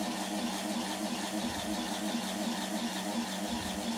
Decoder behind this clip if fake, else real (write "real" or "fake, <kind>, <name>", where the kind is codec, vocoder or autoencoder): real